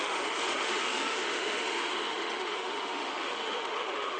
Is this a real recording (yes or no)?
no